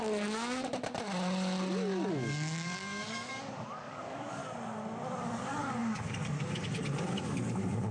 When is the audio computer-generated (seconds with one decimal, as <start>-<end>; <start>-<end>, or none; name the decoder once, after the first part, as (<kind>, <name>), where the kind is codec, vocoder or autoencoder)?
0.0-0.7 (codec, DAC); 2.1-4.4; 5.2-7.9